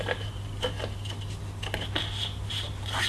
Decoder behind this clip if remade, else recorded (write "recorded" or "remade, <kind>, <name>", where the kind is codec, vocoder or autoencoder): recorded